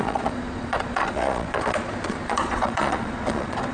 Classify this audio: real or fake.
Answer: fake